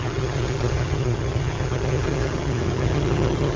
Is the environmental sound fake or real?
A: fake